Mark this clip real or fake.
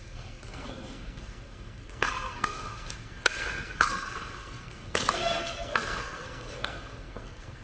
fake